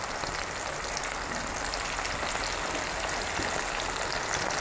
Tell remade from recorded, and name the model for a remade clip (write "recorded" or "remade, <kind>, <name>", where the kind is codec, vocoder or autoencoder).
recorded